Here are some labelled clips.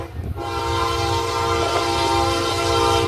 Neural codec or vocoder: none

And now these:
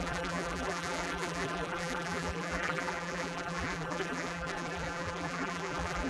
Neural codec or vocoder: vocoder, BigVGAN v2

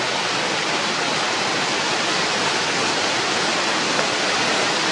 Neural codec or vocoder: none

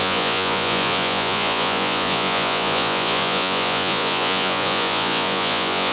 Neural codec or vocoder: vocoder, Vocos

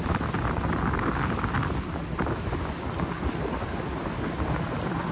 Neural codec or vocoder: none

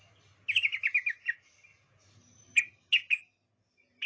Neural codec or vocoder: none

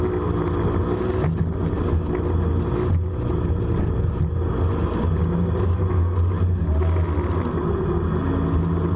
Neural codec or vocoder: none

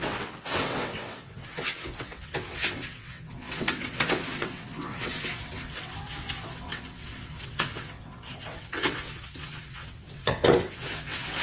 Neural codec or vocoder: vocoder, WaveNeXt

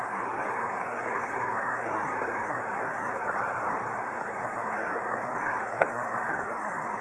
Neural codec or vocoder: codec, SNAC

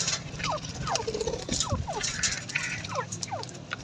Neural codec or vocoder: none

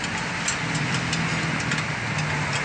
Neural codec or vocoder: none